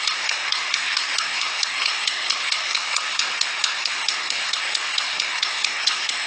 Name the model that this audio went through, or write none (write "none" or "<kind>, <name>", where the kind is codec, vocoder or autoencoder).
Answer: codec, SNAC